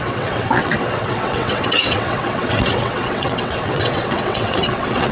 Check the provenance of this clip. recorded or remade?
remade